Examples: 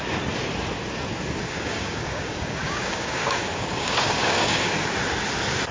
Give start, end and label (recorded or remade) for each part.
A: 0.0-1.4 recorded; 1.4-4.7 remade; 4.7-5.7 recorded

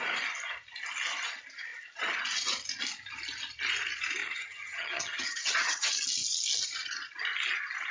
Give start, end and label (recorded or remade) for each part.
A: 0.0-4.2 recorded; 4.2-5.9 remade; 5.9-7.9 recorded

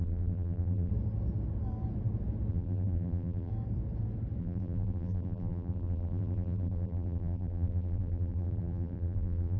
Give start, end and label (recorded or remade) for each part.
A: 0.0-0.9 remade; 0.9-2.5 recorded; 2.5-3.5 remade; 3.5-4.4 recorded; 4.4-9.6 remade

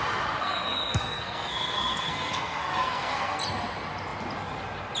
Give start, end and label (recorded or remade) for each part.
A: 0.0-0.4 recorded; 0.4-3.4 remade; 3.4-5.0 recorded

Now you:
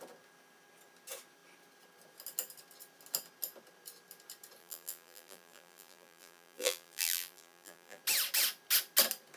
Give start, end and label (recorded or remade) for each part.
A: 0.0-4.6 recorded; 4.6-8.0 remade; 8.0-9.4 recorded

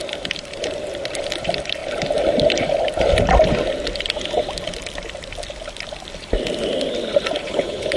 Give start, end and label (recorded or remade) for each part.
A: 0.0-7.4 recorded; 7.4-8.0 remade

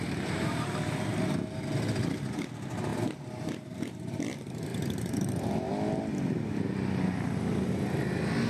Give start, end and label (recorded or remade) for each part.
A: 0.0-1.2 remade; 1.2-2.9 recorded; 2.9-4.1 remade; 4.1-4.7 recorded; 4.7-5.7 remade; 5.7-8.5 recorded

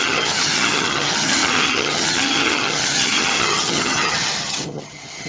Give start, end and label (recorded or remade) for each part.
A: 0.0-5.3 remade